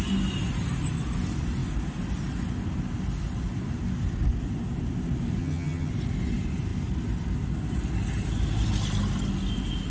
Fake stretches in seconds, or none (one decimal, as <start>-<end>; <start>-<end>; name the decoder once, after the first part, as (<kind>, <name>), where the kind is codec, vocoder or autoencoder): 5.4-5.9 (vocoder, HiFi-GAN)